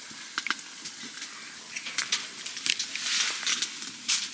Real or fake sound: real